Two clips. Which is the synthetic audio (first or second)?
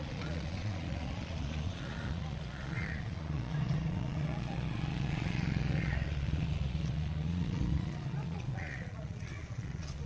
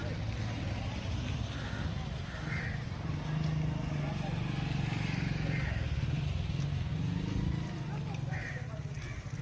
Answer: first